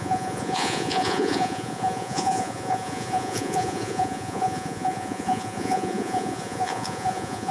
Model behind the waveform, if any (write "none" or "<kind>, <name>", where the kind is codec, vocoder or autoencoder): vocoder, Vocos